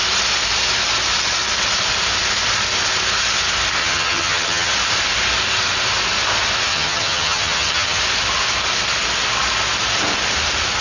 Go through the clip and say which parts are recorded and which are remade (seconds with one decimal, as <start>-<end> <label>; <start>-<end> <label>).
0.0-3.8 recorded; 3.8-4.7 remade; 4.7-6.7 recorded; 6.7-8.0 remade; 8.0-10.8 recorded